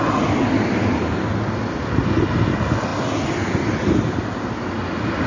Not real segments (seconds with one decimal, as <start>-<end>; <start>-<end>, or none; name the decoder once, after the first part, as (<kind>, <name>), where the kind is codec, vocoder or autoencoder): 2.9-4.6 (vocoder, BigVGAN v2)